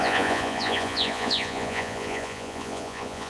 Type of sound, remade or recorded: remade